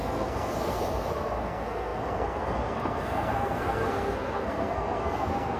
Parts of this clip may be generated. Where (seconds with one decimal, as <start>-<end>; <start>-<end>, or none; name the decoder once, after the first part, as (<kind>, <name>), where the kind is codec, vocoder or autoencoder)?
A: 0.0-5.6 (codec, SNAC)